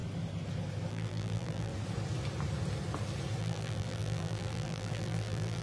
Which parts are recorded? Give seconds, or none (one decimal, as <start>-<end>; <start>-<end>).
0.0-0.9; 1.7-3.4